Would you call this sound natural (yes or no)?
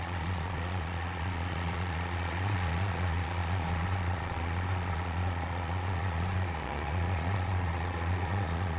no